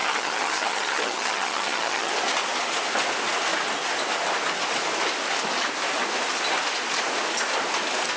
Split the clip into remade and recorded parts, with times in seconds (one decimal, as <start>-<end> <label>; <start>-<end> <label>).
0.0-2.1 remade; 2.1-8.2 recorded